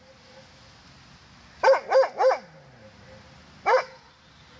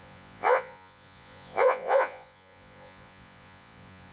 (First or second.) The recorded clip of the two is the first